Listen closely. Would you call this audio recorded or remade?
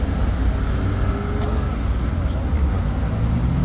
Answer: recorded